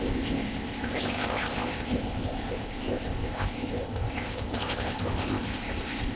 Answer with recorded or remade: remade